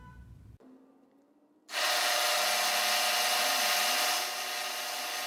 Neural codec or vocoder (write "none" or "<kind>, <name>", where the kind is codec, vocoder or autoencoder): none